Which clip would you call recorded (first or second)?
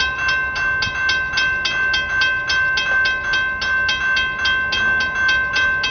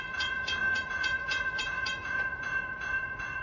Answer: first